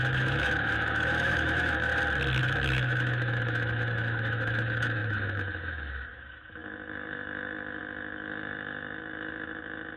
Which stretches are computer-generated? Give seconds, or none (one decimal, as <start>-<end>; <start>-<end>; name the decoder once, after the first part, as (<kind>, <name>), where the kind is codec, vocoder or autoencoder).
0.0-1.9 (autoencoder, DAC-VAE); 2.4-10.0